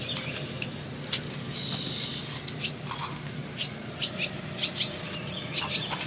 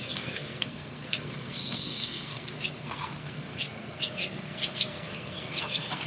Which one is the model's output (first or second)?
second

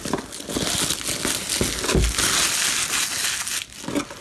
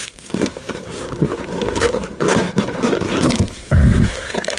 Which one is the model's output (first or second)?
second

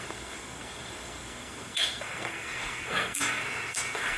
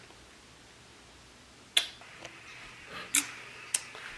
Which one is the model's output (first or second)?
first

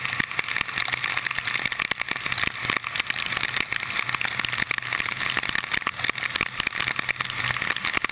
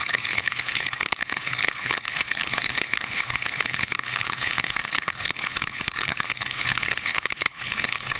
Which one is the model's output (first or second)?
second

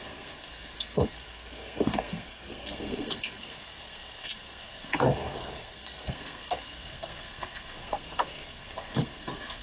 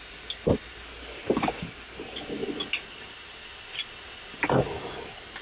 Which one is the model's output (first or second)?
first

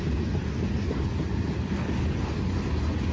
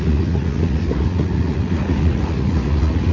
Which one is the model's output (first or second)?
second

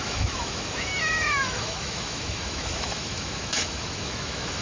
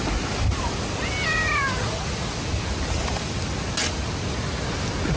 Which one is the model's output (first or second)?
first